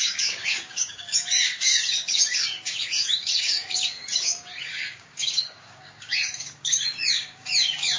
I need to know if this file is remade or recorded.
remade